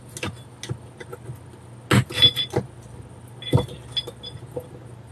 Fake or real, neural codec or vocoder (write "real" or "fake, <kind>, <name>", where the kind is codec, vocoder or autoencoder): real